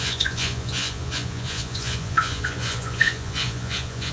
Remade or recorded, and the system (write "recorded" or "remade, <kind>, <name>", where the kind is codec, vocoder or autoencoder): remade, vocoder, Vocos